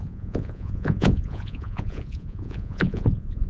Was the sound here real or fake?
fake